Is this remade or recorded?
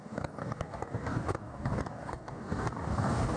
remade